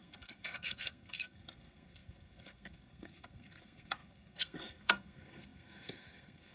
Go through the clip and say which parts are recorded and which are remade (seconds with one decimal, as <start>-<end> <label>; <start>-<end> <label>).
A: 0.0-6.5 remade